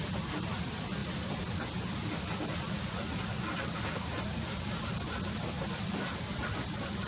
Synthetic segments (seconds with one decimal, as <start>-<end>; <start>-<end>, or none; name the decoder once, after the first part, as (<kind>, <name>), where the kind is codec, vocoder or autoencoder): none